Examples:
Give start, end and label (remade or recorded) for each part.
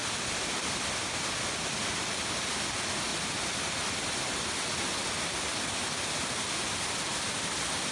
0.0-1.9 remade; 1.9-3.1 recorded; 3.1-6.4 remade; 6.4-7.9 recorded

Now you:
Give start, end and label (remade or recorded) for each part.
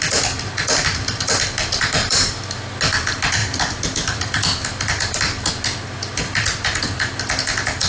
0.0-2.0 recorded; 2.0-2.5 remade; 2.5-7.9 recorded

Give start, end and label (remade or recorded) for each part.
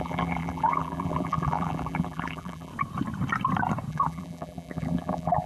0.0-2.7 remade; 2.7-3.9 recorded; 3.9-5.5 remade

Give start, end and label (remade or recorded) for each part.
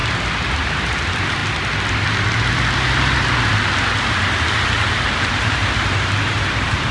0.0-0.5 recorded; 0.5-1.4 remade; 1.4-5.1 recorded; 5.1-5.6 remade; 5.6-6.2 recorded; 6.2-6.9 remade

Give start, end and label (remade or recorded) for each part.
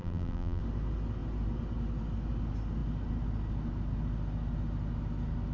0.0-0.6 remade; 0.6-5.5 recorded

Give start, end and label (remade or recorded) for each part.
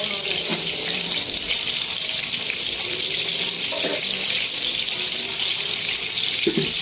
0.0-6.8 remade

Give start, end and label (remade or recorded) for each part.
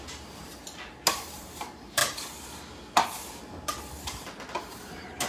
0.0-0.6 remade; 0.6-1.1 recorded; 1.1-2.0 remade; 2.0-4.6 recorded; 4.6-5.3 remade